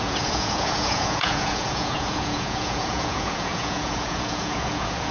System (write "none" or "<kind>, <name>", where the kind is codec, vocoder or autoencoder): vocoder, Vocos